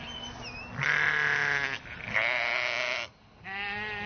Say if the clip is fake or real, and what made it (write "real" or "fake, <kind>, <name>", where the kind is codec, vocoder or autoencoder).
real